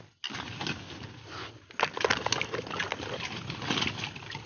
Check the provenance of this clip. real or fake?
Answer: real